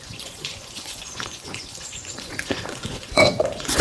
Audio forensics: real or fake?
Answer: fake